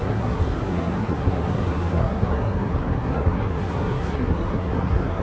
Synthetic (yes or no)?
yes